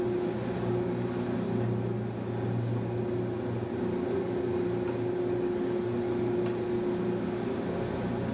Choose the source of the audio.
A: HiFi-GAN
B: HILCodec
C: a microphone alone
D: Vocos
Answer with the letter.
C